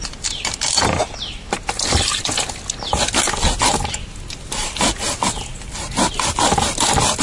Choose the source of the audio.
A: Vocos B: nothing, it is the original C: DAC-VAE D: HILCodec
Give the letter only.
B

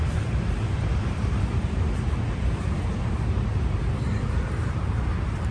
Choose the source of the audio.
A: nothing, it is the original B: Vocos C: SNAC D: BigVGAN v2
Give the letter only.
D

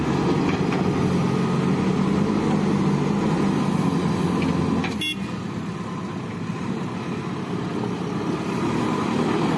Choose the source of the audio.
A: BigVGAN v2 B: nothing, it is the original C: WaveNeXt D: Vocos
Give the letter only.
B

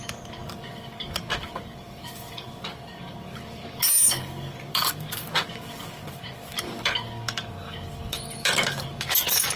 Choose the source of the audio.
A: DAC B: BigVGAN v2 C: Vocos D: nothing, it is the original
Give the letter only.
A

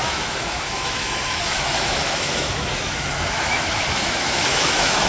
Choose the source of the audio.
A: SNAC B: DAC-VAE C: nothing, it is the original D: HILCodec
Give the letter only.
B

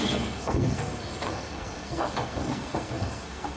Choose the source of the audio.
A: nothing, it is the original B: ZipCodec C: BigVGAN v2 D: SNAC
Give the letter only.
D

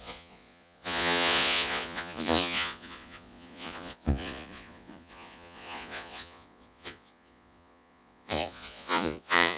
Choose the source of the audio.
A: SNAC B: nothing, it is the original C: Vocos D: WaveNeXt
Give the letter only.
C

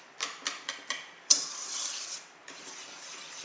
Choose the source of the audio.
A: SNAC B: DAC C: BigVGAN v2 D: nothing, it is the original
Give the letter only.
C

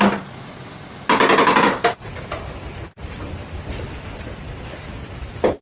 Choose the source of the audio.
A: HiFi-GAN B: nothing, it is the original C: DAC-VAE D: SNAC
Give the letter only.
B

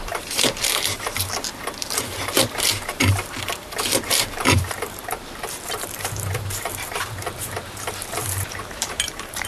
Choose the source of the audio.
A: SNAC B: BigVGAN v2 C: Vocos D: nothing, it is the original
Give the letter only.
B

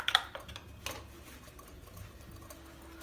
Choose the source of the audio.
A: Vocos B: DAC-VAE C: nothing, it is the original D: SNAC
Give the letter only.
C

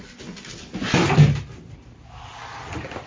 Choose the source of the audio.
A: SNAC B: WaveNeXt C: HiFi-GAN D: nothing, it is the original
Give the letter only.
D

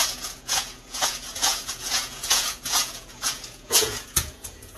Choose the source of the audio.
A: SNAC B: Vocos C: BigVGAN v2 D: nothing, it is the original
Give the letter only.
B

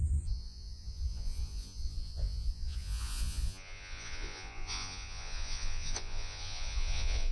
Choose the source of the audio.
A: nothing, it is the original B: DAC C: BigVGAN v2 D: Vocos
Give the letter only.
D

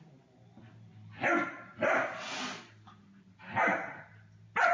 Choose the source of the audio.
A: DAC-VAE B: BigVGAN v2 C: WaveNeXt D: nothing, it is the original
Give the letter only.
D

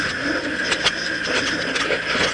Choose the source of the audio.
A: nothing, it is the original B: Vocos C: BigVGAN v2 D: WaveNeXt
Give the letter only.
A